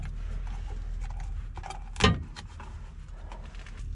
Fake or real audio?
real